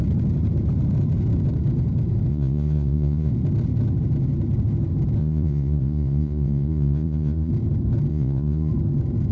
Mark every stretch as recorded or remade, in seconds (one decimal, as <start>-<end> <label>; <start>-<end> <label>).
0.0-2.3 recorded; 2.3-3.3 remade; 3.3-5.2 recorded; 5.2-7.5 remade; 7.5-8.1 recorded; 8.1-8.7 remade; 8.7-9.3 recorded